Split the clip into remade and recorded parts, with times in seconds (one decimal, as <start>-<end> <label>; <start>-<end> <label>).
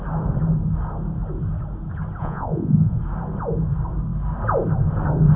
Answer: 0.0-2.2 recorded; 2.2-3.0 remade; 3.0-5.4 recorded